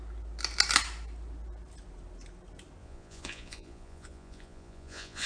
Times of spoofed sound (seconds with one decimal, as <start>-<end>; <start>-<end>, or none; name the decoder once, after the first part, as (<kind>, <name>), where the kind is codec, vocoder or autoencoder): 2.8-5.3 (vocoder, Vocos)

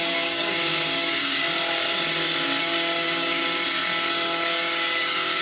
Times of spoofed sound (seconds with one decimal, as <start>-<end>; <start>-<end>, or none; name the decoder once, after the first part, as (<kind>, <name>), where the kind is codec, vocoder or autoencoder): 0.0-1.4 (codec, DAC); 2.6-3.4; 4.1-5.4

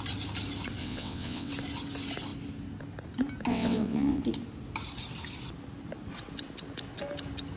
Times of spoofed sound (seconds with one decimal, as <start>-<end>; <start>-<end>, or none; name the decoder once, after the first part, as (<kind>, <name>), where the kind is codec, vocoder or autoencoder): 0.8-1.5 (vocoder, WaveNeXt); 3.5-4.2

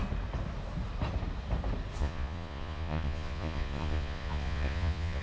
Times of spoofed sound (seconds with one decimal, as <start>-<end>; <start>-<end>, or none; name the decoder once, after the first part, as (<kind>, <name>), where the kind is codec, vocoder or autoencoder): 2.0-5.2 (vocoder, Vocos)